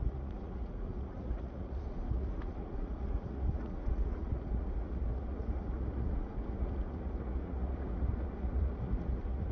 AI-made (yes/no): yes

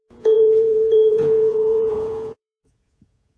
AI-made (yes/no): yes